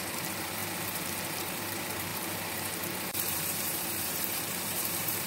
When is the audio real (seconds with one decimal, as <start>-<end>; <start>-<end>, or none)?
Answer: none